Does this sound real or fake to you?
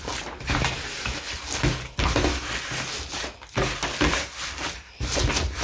real